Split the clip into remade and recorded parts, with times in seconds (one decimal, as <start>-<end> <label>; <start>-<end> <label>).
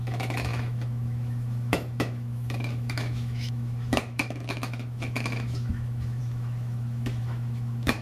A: 0.0-8.0 remade